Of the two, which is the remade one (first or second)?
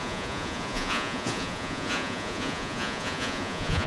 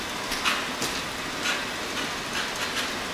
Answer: first